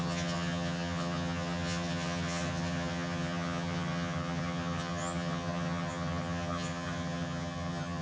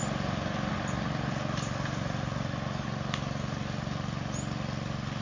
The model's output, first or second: first